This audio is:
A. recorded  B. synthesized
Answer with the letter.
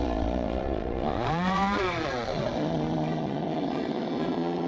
B